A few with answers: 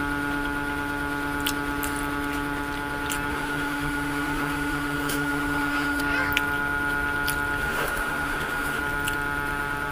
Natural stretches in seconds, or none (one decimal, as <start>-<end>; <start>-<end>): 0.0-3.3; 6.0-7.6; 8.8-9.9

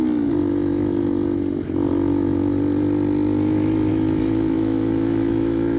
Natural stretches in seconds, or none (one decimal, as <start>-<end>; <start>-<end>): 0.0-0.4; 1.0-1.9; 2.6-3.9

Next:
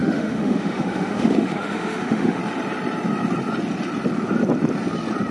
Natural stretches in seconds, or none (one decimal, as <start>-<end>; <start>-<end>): 2.4-5.3